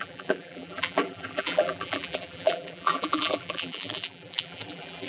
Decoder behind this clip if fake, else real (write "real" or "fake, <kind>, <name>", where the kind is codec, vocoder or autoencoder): fake, vocoder, BigVGAN v2